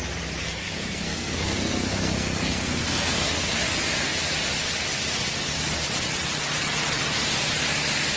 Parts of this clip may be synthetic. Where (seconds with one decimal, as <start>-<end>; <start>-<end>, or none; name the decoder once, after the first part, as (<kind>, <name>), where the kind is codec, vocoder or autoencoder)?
0.4-3.6 (codec, SNAC)